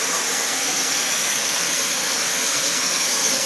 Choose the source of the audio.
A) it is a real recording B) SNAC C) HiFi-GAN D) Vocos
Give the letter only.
B